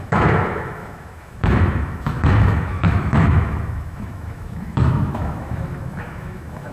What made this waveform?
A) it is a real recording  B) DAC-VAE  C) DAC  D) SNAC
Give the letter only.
B